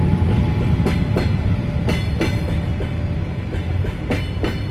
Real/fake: real